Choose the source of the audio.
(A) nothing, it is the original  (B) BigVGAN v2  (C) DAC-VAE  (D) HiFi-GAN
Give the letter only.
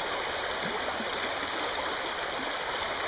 A